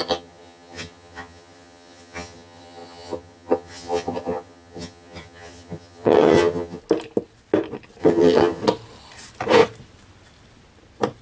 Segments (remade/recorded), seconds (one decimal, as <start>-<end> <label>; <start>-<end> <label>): 0.0-6.8 remade; 6.8-8.0 recorded; 8.0-8.6 remade; 8.6-11.2 recorded

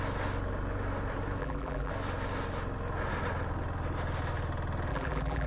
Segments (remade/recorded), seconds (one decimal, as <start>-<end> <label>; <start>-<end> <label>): 0.0-1.4 recorded; 1.4-1.9 remade; 1.9-4.9 recorded; 4.9-5.5 remade

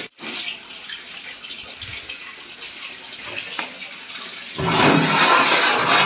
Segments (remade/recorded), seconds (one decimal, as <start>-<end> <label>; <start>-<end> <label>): 0.0-6.1 recorded

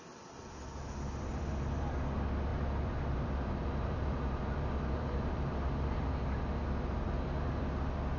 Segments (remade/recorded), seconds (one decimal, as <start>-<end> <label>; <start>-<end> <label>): 0.0-2.5 recorded; 2.5-6.4 remade; 6.4-8.2 recorded